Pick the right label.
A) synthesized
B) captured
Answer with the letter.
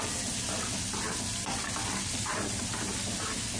B